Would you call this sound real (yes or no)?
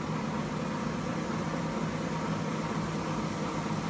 yes